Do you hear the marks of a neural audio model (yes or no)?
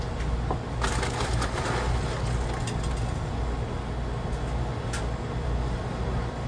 no